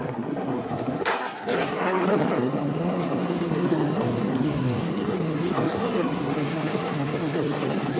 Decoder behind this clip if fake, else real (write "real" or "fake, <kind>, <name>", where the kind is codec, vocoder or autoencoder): fake, codec, SNAC